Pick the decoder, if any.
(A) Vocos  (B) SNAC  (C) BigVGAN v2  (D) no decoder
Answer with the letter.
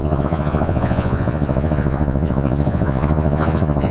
A